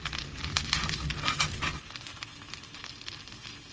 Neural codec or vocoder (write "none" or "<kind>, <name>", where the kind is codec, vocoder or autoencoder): none